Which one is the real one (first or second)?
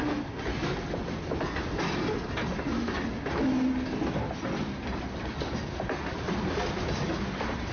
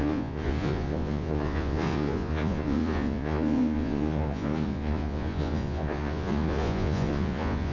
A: first